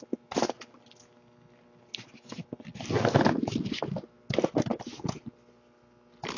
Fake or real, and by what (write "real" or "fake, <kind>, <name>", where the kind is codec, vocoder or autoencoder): real